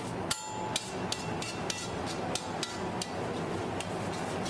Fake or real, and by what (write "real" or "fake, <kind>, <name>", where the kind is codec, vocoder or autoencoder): real